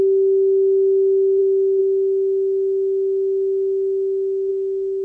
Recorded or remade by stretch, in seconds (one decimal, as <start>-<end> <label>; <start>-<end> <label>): 0.0-5.0 recorded